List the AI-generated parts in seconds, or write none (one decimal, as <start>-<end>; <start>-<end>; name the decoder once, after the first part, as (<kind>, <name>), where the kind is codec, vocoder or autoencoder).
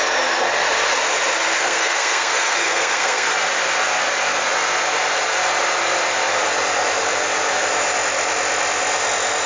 1.6-3.3 (codec, SNAC)